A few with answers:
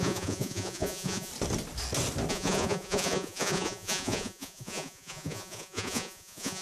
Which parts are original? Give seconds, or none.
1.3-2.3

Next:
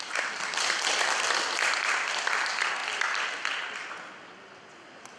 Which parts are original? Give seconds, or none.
0.0-5.2

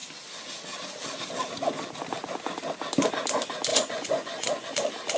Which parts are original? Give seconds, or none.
0.0-3.7; 4.7-5.2

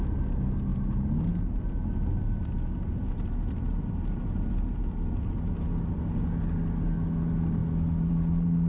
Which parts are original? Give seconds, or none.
0.0-8.7